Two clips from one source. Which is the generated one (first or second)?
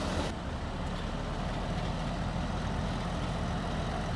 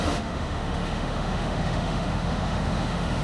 second